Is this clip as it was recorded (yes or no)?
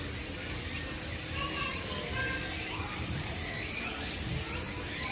yes